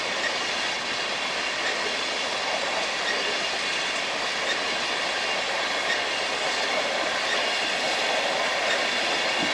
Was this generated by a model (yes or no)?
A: no